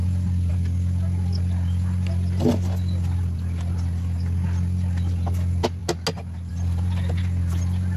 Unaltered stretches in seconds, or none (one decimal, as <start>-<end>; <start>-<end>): 0.0-8.0